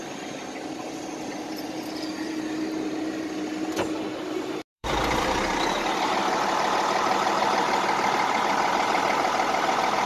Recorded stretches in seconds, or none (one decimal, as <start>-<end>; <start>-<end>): 0.0-4.7